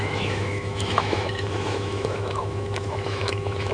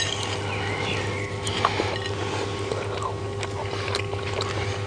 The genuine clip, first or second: second